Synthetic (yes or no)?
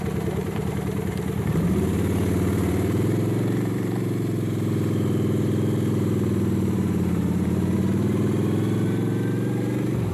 yes